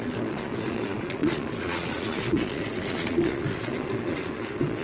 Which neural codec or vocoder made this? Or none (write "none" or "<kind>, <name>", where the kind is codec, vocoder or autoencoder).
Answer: vocoder, Vocos